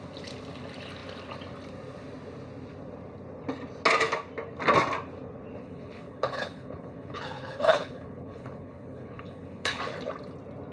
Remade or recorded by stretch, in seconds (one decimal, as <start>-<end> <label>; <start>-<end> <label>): 0.0-5.6 recorded; 5.6-9.8 remade; 9.8-10.7 recorded